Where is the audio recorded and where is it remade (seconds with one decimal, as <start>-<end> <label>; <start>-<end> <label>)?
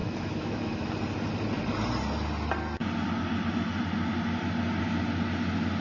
0.0-0.9 remade; 0.9-5.8 recorded